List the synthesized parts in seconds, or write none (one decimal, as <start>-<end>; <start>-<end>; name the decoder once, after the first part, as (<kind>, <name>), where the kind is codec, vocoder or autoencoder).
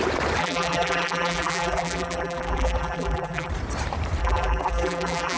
0.4-3.5 (vocoder, BigVGAN v2); 4.2-5.4